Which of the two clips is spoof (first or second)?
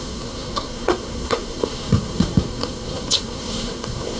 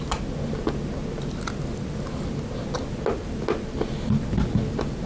first